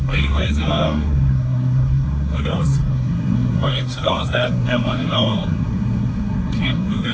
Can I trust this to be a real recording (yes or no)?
no